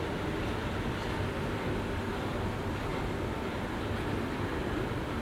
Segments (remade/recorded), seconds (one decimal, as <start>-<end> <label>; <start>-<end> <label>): 0.0-0.6 recorded; 0.6-3.7 remade; 3.7-5.2 recorded